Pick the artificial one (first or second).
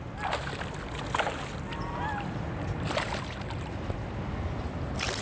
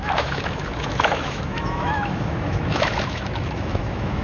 second